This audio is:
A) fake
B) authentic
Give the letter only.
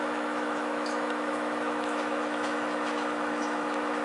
A